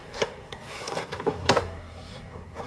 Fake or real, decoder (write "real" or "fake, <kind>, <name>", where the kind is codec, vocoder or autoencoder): fake, codec, SNAC